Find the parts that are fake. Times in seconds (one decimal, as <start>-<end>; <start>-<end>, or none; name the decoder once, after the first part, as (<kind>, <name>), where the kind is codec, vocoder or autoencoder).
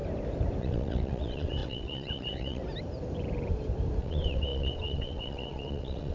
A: 0.6-2.6 (vocoder, WaveNeXt); 4.0-6.1